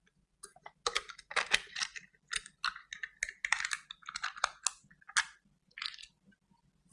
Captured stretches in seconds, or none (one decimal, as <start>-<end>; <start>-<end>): 0.0-6.9